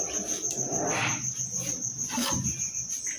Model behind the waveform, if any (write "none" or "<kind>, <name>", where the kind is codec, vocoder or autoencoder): none